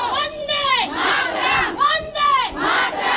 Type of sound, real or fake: fake